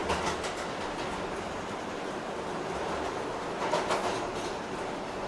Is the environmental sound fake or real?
real